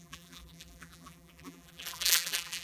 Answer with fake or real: fake